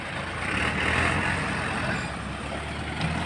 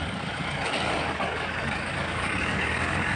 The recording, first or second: first